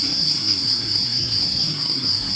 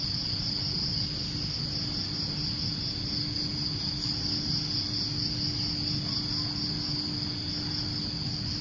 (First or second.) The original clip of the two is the second